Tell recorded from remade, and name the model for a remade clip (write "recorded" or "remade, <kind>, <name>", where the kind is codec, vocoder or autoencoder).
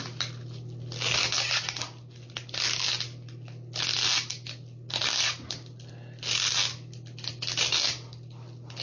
recorded